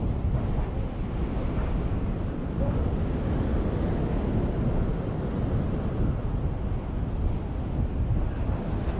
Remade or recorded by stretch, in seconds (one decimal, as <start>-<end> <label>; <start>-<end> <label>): 0.0-9.0 recorded